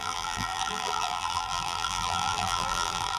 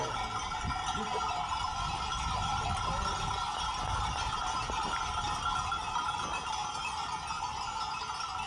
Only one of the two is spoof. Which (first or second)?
first